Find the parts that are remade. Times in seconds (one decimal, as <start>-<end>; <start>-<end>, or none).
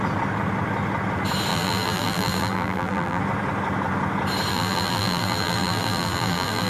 1.5-3.2; 4.5-6.7